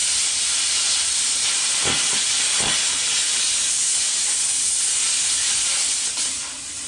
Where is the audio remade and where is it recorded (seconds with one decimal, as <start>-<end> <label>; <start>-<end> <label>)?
0.0-6.9 recorded